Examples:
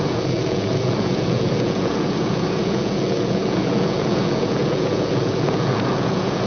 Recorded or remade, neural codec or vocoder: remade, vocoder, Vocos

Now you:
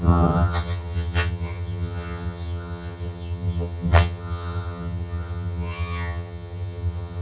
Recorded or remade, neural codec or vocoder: remade, vocoder, HiFi-GAN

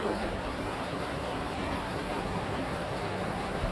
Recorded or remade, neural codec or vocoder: remade, codec, SNAC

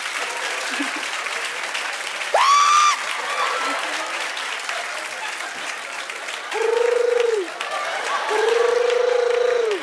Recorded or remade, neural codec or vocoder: recorded